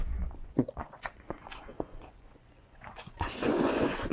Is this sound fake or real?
fake